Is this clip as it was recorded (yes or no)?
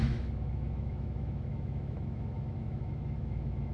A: no